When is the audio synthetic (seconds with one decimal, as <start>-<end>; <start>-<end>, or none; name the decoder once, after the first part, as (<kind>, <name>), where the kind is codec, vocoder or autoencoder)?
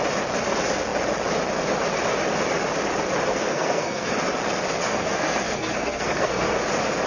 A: 3.3-4.1 (codec, SNAC); 4.8-6.6